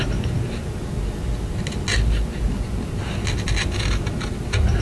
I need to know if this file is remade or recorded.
recorded